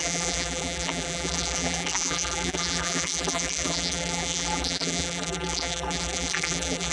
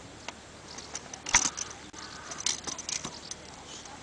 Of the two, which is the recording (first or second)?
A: second